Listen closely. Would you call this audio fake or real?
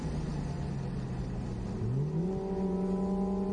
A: real